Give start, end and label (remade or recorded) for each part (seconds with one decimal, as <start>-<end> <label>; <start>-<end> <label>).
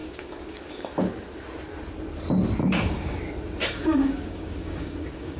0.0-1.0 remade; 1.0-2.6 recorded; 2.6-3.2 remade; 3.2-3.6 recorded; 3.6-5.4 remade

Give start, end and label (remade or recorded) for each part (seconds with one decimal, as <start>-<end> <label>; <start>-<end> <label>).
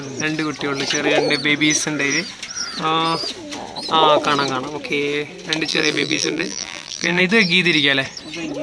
0.0-5.7 recorded; 5.7-7.2 remade; 7.2-8.6 recorded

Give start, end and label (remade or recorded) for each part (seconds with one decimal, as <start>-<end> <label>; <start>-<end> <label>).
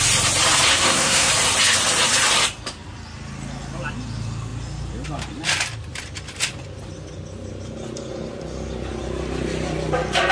0.0-0.7 recorded; 0.7-1.3 remade; 1.3-10.3 recorded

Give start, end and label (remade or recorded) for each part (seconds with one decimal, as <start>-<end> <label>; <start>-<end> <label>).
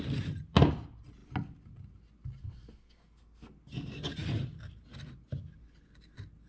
0.0-2.4 recorded; 2.4-3.5 remade; 3.5-6.5 recorded